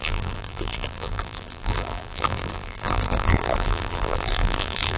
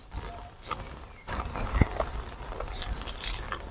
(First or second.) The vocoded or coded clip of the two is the first